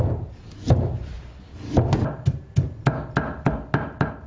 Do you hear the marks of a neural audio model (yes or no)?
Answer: no